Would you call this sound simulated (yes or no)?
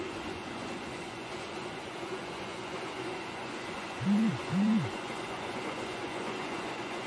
yes